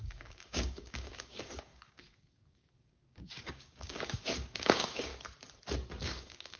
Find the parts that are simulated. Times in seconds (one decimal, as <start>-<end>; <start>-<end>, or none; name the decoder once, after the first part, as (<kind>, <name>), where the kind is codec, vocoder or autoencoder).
0.0-5.1 (codec, DAC); 6.0-6.6